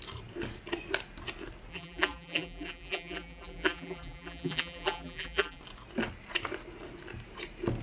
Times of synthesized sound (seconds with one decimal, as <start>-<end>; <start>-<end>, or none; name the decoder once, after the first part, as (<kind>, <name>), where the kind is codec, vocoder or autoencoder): 1.7-5.6 (vocoder, BigVGAN v2)